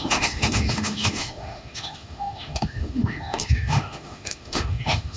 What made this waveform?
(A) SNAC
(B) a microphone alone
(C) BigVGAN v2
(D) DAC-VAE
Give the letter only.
D